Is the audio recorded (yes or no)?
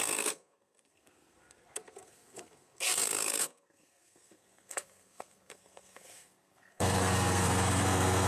no